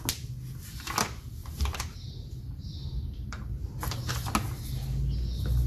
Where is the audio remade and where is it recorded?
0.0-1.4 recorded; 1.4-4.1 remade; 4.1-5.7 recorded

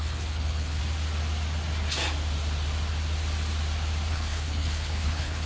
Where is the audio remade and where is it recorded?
0.0-0.8 remade; 0.8-4.1 recorded; 4.1-5.5 remade

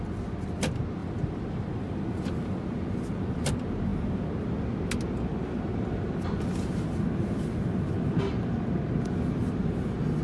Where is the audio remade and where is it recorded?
0.0-1.0 recorded; 1.0-2.6 remade; 2.6-10.2 recorded